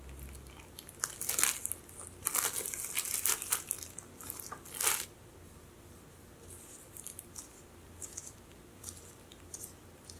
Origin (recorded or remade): recorded